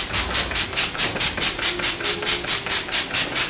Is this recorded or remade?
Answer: recorded